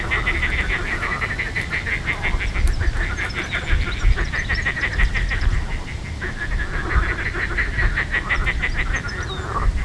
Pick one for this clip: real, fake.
real